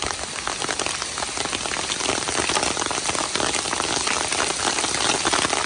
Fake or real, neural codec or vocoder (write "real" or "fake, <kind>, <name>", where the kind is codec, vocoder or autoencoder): real